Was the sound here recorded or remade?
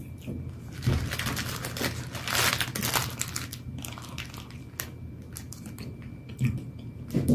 recorded